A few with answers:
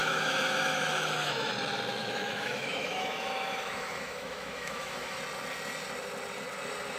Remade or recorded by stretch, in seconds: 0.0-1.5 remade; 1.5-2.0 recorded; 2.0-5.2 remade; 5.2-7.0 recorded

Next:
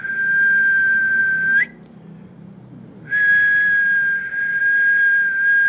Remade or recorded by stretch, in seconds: 0.0-5.7 recorded

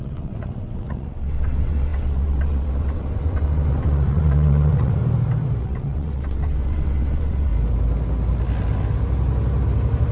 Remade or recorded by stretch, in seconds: 0.0-5.0 remade; 5.0-5.6 recorded; 5.6-7.5 remade; 7.5-10.1 recorded

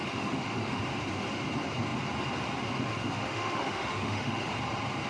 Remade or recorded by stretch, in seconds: 0.0-0.8 remade; 0.8-2.9 recorded; 2.9-4.5 remade; 4.5-5.1 recorded

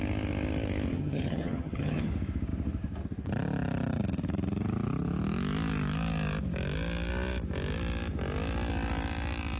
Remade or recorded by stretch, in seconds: 0.0-0.9 recorded; 0.9-2.1 remade; 2.1-9.6 recorded

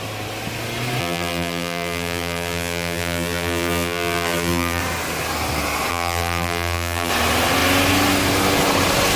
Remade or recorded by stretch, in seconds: 0.0-1.0 recorded; 1.0-4.8 remade; 4.8-5.9 recorded; 5.9-7.1 remade; 7.1-9.2 recorded

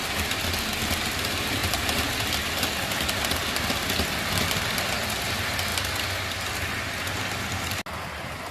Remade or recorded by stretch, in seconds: 0.0-1.6 recorded; 1.6-2.3 remade; 2.3-8.5 recorded

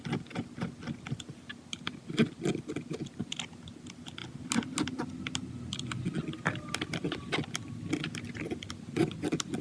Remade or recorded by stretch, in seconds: 0.0-9.6 recorded